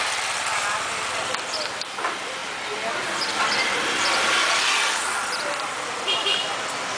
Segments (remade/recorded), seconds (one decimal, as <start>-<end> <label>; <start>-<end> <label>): 0.0-7.0 recorded